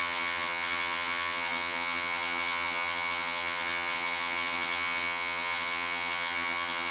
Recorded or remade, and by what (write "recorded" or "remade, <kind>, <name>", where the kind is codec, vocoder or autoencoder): remade, vocoder, HiFi-GAN